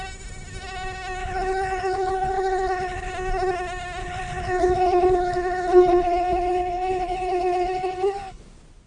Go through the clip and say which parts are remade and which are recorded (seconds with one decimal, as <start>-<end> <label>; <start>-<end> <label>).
0.0-1.2 recorded; 1.2-3.1 remade; 3.1-4.0 recorded; 4.0-8.4 remade; 8.4-8.9 recorded